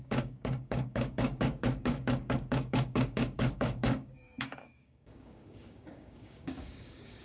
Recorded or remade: remade